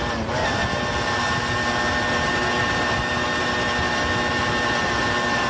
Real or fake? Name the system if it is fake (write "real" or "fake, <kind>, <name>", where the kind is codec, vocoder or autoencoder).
real